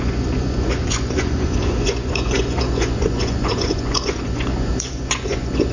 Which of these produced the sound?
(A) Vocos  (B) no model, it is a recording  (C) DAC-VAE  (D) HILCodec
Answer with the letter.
A